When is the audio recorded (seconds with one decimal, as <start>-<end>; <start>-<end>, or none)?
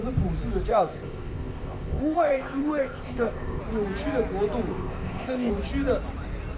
0.0-0.7; 3.6-4.7; 5.5-6.6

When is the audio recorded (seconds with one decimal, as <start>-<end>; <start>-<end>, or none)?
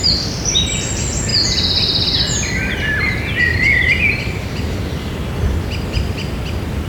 1.3-3.4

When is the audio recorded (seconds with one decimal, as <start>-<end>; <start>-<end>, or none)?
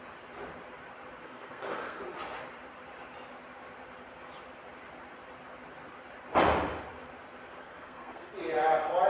0.0-1.2; 2.0-7.6; 8.3-9.1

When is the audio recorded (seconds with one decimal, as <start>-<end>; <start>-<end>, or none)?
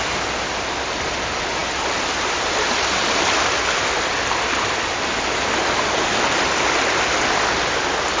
0.0-8.2